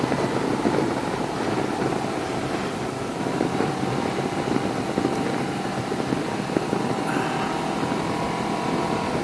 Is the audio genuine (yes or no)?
yes